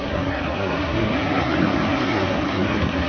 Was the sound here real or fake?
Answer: fake